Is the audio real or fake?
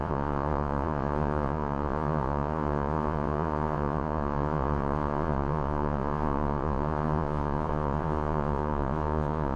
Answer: fake